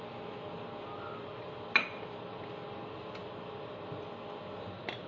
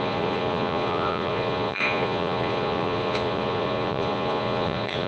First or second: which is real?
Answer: first